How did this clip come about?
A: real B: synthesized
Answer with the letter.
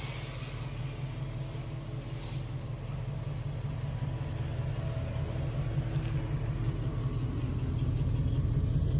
A